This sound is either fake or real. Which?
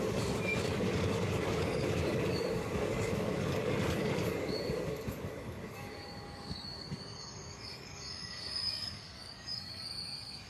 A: fake